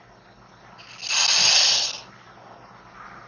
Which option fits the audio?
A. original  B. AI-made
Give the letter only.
A